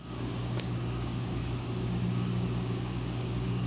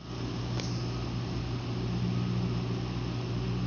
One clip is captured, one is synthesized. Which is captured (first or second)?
second